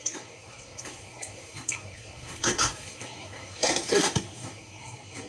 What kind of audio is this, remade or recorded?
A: remade